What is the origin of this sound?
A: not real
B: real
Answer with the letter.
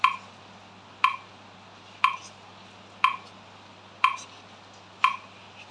B